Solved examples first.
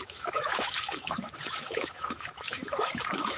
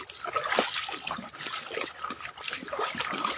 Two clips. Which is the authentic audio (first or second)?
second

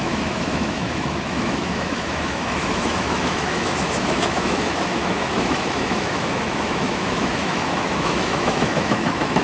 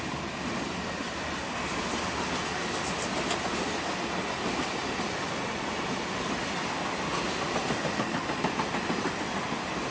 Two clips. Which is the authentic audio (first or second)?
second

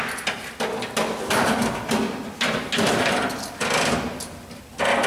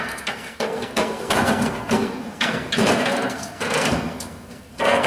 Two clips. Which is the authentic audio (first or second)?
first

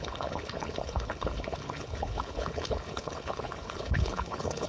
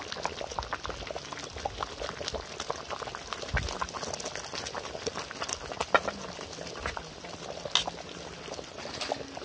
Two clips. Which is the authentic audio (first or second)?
second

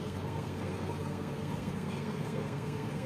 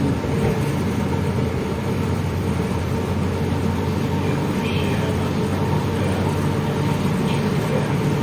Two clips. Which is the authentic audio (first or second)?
second